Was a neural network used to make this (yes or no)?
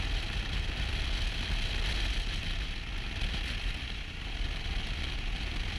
no